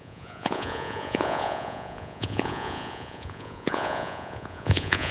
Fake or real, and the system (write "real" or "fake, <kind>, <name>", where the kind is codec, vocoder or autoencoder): fake, vocoder, Vocos